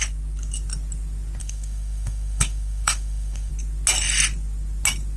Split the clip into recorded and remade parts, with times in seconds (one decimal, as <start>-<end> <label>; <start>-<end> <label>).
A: 0.0-1.4 recorded; 1.4-3.5 remade; 3.5-5.2 recorded